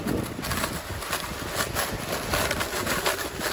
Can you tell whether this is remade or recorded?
recorded